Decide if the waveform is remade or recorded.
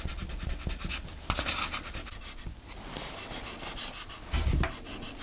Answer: recorded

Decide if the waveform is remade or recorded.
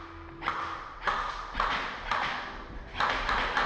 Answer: recorded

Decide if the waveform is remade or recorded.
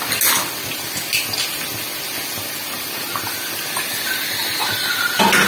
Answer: recorded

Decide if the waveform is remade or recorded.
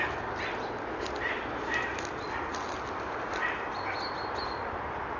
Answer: recorded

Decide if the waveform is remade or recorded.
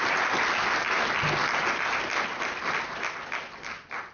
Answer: recorded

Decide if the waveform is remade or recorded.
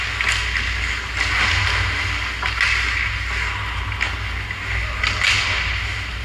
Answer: recorded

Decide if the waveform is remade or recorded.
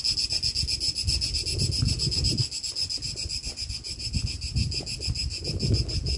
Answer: recorded